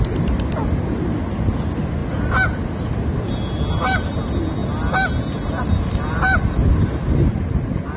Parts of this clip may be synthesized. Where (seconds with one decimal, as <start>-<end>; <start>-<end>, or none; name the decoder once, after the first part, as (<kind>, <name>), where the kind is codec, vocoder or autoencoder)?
none